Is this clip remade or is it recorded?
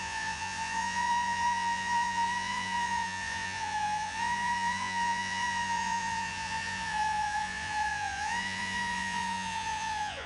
remade